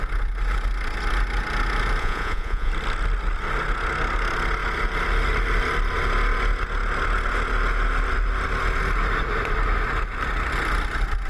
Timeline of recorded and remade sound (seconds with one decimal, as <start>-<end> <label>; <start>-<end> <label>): 0.0-2.0 recorded; 2.0-2.7 remade; 2.7-11.3 recorded